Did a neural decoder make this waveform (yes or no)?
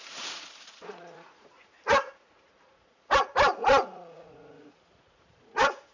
yes